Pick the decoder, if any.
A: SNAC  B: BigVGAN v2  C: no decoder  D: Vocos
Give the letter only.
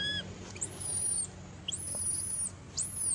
C